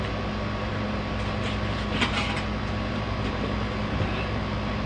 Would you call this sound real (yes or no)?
yes